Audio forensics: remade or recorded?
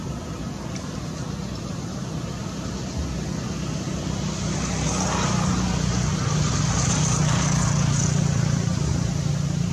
recorded